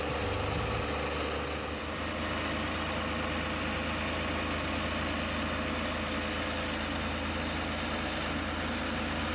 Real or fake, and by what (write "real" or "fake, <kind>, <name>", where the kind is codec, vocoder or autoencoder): real